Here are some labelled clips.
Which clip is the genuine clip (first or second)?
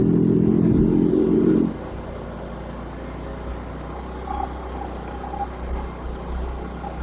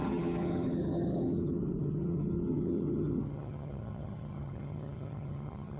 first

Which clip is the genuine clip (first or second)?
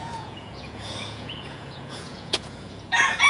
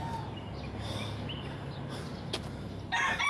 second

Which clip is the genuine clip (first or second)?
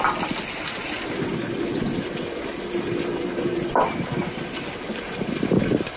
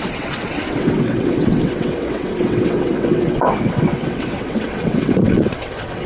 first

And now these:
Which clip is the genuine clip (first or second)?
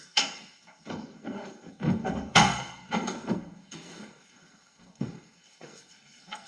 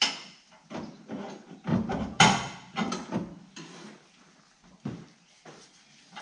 second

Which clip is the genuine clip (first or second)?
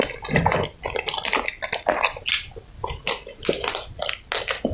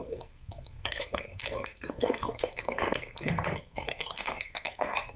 first